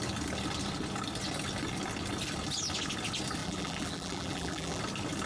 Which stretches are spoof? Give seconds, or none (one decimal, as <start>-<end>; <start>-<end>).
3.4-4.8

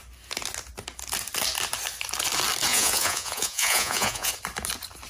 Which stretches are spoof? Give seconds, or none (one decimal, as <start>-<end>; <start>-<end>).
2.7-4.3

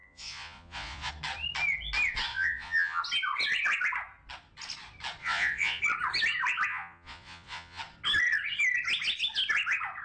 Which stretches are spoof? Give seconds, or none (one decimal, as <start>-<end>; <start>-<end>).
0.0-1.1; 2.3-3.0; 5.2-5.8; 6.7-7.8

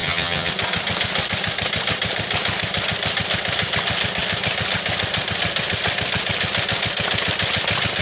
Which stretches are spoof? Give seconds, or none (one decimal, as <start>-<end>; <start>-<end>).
0.0-0.5

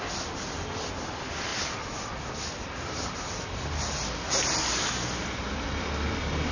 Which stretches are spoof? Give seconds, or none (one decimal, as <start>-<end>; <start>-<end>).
none